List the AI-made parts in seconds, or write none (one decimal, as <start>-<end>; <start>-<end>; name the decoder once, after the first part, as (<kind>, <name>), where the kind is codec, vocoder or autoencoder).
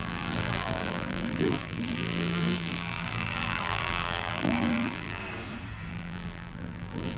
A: 0.0-5.2 (vocoder, BigVGAN v2); 5.9-7.2